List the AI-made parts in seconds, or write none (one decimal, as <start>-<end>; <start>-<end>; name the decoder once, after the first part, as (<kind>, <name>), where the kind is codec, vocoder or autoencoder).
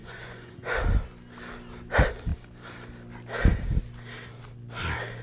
0.0-0.8 (vocoder, Vocos)